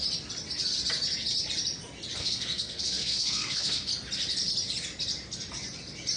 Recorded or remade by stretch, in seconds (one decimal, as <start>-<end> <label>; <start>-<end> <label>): 0.0-2.2 recorded; 2.2-3.9 remade; 3.9-6.2 recorded